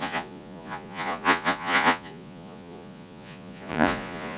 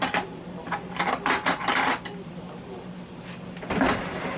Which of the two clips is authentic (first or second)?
second